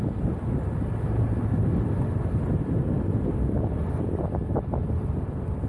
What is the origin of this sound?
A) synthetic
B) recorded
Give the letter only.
B